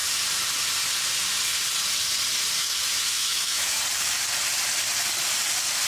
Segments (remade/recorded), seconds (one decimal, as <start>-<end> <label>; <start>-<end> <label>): 0.0-2.6 recorded; 2.6-3.8 remade; 3.8-5.9 recorded